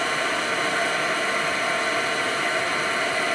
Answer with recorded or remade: recorded